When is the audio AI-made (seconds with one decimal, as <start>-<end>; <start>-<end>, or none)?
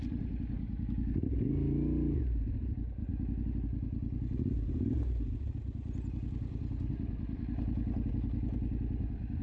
none